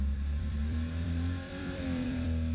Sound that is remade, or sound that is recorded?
remade